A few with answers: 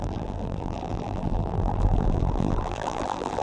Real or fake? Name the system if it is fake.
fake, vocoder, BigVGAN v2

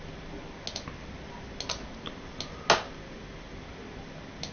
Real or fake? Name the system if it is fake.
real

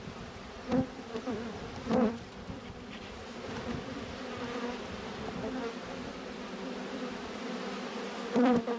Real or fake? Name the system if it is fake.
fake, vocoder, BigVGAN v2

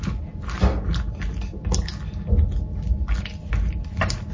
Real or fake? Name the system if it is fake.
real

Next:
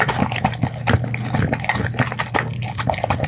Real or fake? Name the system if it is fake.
real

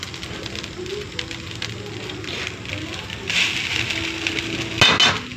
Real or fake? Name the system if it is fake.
real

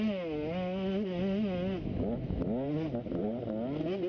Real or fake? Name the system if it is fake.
real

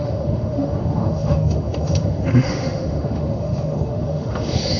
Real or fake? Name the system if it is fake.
fake, autoencoder, DAC-VAE